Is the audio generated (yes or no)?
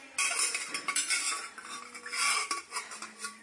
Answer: no